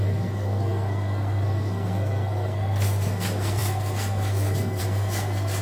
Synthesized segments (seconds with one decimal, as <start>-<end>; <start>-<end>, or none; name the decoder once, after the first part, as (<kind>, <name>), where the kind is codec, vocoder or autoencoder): 0.0-5.6 (codec, SNAC)